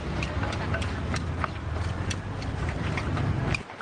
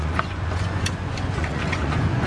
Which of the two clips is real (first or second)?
first